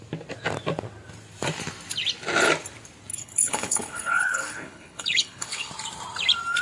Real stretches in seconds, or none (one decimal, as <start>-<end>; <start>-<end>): 0.0-3.1; 5.7-6.6